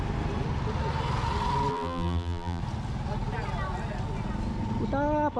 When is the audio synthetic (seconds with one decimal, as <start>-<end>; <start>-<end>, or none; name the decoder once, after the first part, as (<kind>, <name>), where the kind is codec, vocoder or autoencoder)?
1.7-2.6 (vocoder, BigVGAN v2)